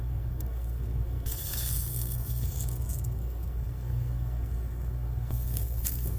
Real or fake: fake